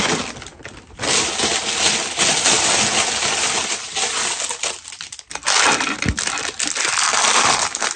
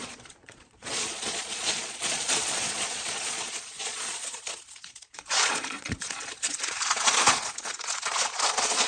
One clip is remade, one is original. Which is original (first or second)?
first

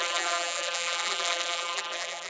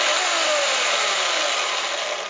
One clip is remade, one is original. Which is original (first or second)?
second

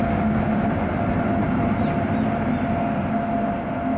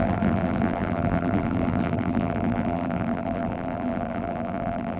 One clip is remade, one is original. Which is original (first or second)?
first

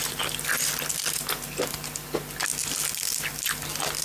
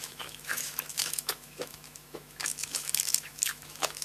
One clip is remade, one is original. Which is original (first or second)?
first